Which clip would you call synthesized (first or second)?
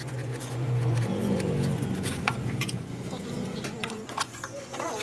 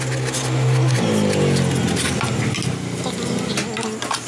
first